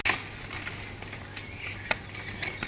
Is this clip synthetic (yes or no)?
no